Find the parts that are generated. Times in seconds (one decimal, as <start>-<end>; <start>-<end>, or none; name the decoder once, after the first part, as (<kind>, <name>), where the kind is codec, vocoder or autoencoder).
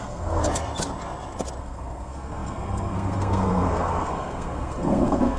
0.0-0.4 (codec, SNAC); 1.6-5.4